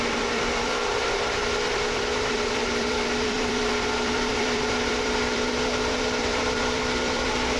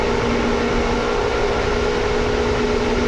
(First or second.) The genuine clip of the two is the second